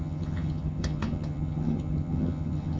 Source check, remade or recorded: remade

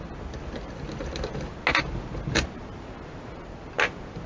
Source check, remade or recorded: recorded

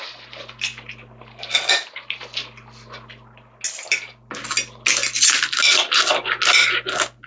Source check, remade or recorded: recorded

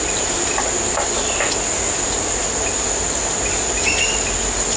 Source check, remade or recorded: recorded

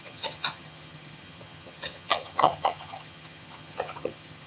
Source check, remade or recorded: remade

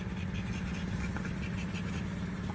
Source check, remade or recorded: recorded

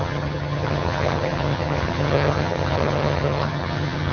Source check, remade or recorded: remade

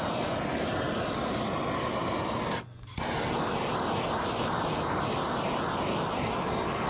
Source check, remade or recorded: recorded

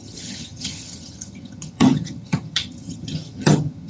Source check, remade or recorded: remade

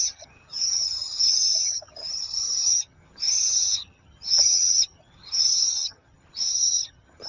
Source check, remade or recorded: remade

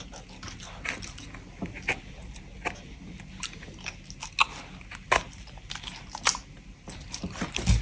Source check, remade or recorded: recorded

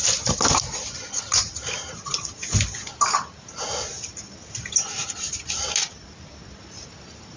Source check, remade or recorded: recorded